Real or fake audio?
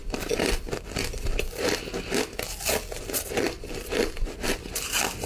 real